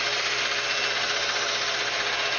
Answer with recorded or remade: recorded